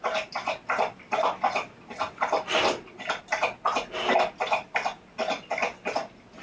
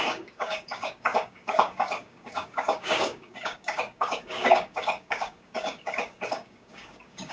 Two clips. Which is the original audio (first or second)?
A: first